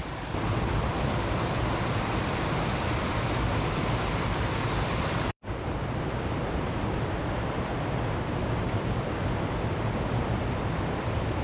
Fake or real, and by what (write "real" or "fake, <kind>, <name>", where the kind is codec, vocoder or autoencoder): fake, vocoder, BigVGAN v2